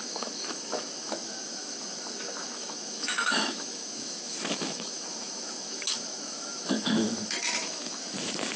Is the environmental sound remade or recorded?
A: remade